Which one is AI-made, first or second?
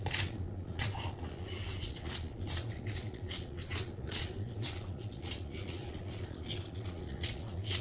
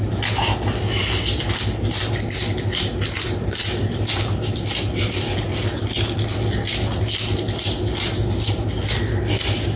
first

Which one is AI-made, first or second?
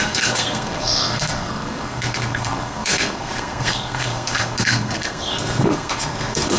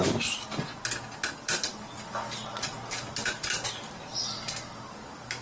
first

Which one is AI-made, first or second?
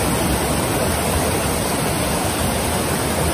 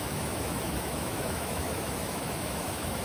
second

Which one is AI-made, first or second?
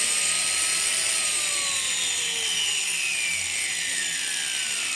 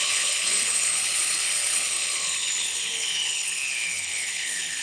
second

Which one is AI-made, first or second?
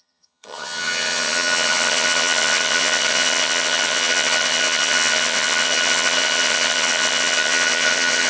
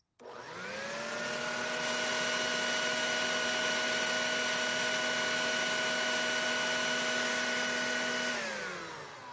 first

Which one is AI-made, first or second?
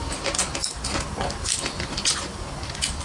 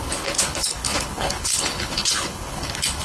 second